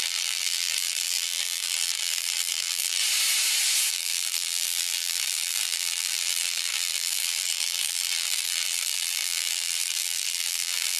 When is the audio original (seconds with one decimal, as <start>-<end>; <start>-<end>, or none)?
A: 3.0-3.9